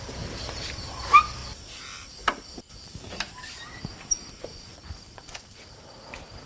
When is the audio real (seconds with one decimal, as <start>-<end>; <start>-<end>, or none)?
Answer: 0.0-4.5; 5.4-6.5